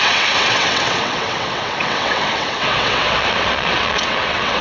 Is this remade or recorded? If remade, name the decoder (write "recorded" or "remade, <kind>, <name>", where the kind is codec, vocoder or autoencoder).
remade, vocoder, WaveNeXt